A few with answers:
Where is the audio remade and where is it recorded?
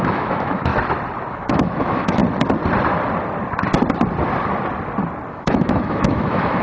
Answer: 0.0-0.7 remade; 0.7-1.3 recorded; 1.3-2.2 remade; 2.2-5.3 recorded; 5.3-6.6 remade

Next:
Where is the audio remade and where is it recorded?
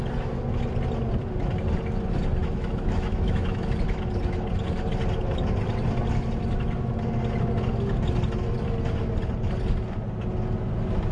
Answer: 0.0-2.4 recorded; 2.4-3.7 remade; 3.7-11.1 recorded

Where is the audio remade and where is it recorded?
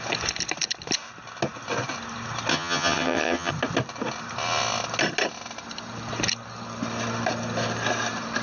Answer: 0.0-2.5 recorded; 2.5-3.5 remade; 3.5-8.4 recorded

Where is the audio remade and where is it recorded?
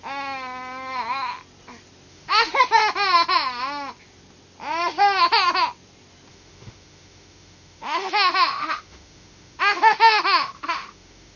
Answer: 0.0-2.1 recorded; 2.1-2.6 remade; 2.6-6.3 recorded; 6.3-11.4 remade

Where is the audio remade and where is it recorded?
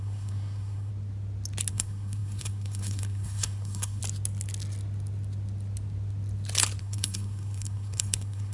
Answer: 0.0-0.9 remade; 0.9-1.7 recorded; 1.7-4.0 remade; 4.0-6.8 recorded; 6.8-8.5 remade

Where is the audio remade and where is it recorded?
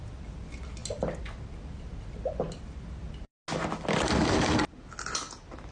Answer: 0.0-5.7 recorded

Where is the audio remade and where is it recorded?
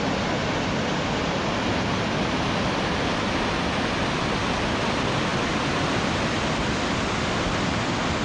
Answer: 0.0-5.3 recorded; 5.3-5.9 remade; 5.9-8.2 recorded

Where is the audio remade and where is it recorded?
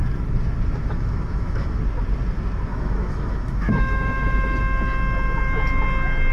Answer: 0.0-0.8 recorded; 0.8-1.8 remade; 1.8-2.7 recorded; 2.7-4.6 remade; 4.6-6.3 recorded